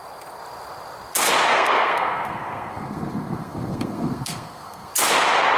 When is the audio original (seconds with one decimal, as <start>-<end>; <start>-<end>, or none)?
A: 0.0-1.5; 4.9-5.6